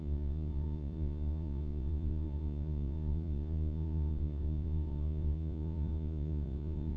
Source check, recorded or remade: remade